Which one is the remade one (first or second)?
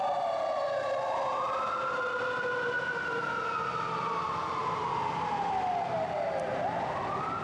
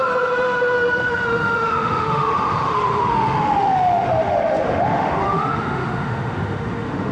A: second